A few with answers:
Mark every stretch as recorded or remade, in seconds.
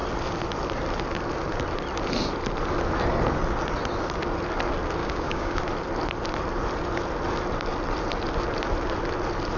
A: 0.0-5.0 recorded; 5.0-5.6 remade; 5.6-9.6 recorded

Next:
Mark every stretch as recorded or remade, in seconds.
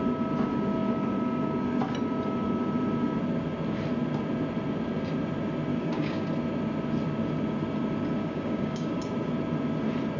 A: 0.0-5.7 recorded; 5.7-6.3 remade; 6.3-8.2 recorded; 8.2-9.0 remade; 9.0-10.2 recorded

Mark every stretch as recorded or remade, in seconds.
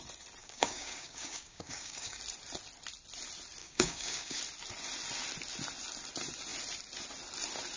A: 0.0-0.4 recorded; 0.4-2.2 remade; 2.2-3.6 recorded; 3.6-4.4 remade; 4.4-7.8 recorded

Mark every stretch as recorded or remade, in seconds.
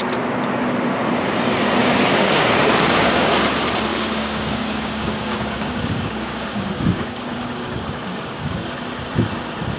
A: 0.0-1.8 recorded; 1.8-3.2 remade; 3.2-3.9 recorded; 3.9-8.6 remade; 8.6-9.8 recorded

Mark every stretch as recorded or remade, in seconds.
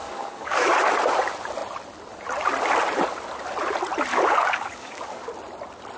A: 0.0-0.7 remade; 0.7-4.1 recorded; 4.1-5.2 remade; 5.2-6.0 recorded